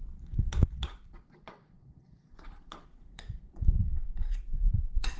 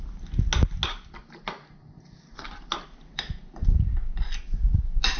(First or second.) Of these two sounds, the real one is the second